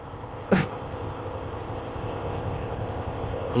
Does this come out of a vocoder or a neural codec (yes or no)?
yes